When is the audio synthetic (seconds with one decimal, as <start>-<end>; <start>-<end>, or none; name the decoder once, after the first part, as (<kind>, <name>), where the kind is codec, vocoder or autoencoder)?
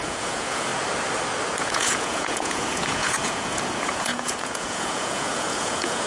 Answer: 0.0-0.7 (vocoder, Vocos); 1.6-6.1